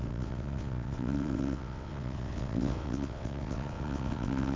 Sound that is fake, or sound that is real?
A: fake